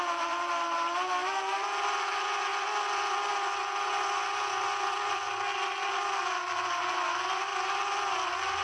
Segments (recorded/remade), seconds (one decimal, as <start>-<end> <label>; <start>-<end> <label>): 0.0-2.5 remade; 2.5-5.1 recorded; 5.1-8.6 remade